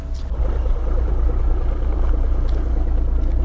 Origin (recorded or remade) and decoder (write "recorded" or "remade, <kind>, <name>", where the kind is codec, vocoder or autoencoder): recorded